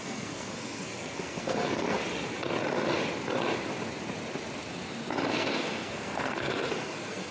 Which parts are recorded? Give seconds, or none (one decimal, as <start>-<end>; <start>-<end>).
2.0-5.3